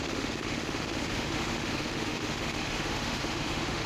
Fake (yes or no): yes